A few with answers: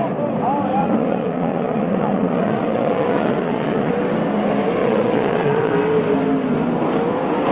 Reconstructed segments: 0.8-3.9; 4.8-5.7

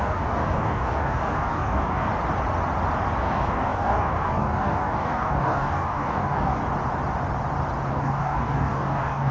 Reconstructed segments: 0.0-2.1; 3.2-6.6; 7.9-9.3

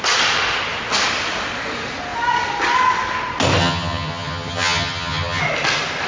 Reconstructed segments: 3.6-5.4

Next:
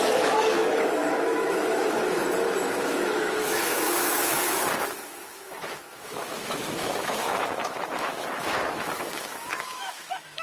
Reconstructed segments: 0.0-2.2; 2.8-10.4

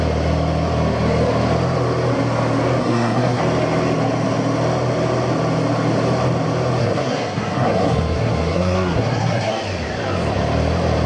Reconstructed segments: 2.8-3.4; 6.8-9.5

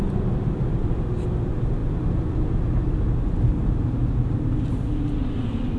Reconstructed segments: none